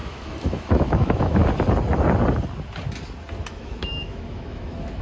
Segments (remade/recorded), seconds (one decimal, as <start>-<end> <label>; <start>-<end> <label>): 0.0-1.4 remade; 1.4-3.5 recorded; 3.5-5.0 remade

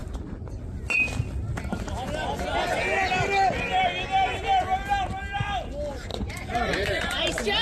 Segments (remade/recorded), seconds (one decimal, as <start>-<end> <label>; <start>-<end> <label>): 0.0-6.1 recorded; 6.1-7.1 remade; 7.1-7.6 recorded

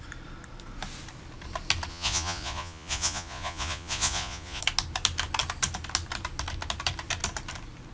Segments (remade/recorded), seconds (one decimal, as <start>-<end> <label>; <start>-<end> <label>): 0.0-1.9 recorded; 1.9-4.6 remade; 4.6-7.9 recorded

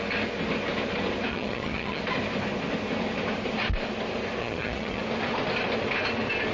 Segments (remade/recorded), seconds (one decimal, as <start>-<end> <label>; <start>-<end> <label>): 0.0-1.3 recorded; 1.3-2.0 remade; 2.0-4.4 recorded; 4.4-5.0 remade; 5.0-6.5 recorded

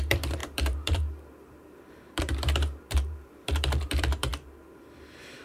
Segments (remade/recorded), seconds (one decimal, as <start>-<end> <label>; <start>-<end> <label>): 0.0-5.4 remade